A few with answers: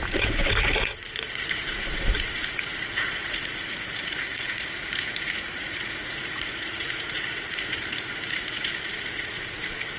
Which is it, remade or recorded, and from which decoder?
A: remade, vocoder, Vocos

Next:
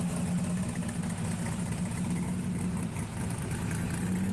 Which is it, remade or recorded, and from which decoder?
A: recorded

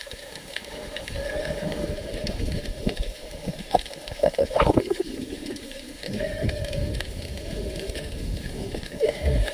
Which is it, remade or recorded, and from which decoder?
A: remade, autoencoder, DAC-VAE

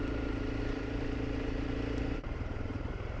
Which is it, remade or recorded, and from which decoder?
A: remade, vocoder, BigVGAN v2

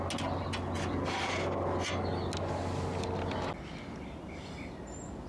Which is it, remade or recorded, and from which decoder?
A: recorded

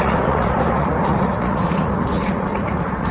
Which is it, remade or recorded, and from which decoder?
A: remade, vocoder, Vocos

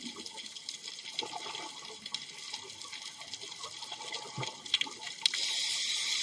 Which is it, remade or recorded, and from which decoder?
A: recorded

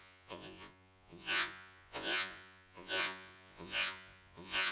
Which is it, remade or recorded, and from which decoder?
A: remade, vocoder, Vocos